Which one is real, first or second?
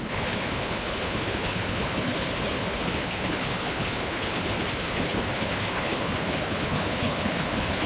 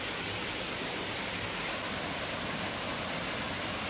second